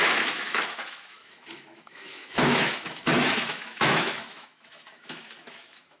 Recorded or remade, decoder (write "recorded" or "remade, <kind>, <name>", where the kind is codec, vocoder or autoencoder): remade, autoencoder, DAC-VAE